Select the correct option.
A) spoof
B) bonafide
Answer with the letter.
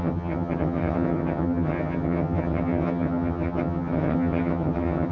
A